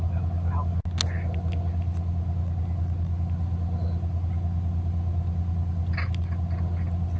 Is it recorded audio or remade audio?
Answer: recorded